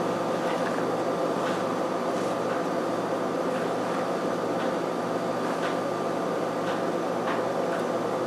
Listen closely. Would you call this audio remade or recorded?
recorded